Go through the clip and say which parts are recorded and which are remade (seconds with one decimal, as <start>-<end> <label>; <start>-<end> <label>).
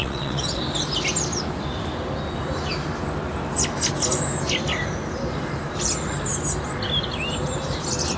0.0-0.6 remade; 0.6-8.2 recorded